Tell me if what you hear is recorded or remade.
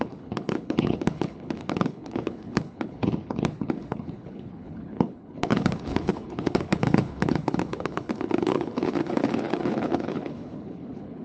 remade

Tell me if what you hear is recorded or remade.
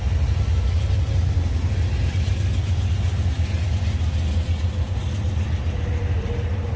recorded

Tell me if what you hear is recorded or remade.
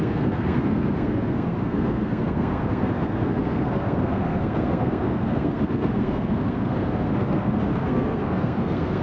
remade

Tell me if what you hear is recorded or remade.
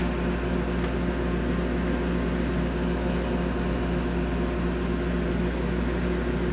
recorded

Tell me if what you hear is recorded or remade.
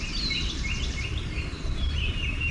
remade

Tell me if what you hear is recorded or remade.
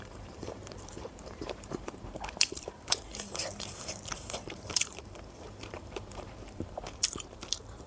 remade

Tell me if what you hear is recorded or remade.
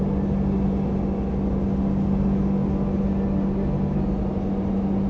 recorded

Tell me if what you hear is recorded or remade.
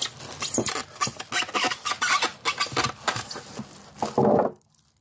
recorded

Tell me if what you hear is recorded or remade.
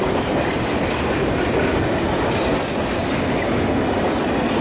recorded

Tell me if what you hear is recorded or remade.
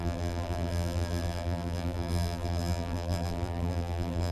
remade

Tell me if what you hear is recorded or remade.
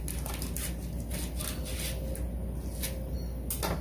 recorded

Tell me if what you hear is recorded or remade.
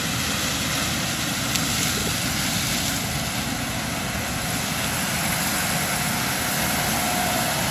recorded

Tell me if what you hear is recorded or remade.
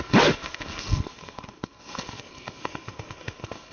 remade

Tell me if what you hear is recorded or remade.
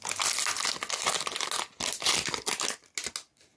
recorded